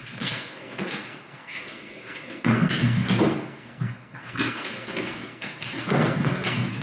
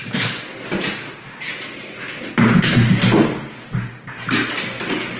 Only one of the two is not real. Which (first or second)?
first